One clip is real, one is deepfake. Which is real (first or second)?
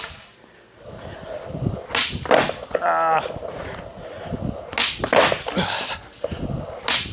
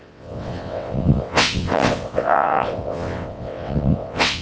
first